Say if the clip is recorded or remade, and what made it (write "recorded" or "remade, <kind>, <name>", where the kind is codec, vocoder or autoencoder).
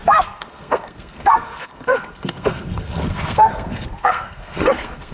remade, codec, SNAC